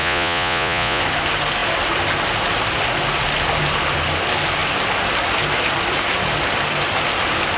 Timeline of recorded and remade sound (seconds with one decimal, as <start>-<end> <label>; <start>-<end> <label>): 0.0-1.0 remade; 1.0-7.6 recorded